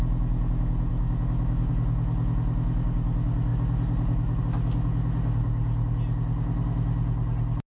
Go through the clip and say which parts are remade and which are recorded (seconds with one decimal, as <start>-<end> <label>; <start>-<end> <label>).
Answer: 0.0-0.9 recorded; 0.9-1.7 remade; 1.7-7.7 recorded